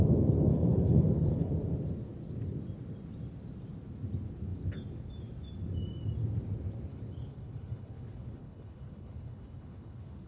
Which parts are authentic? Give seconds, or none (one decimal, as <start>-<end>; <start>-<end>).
0.0-0.5; 1.5-6.9